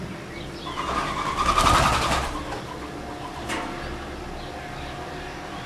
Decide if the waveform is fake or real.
real